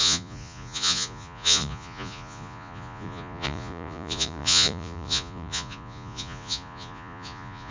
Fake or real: fake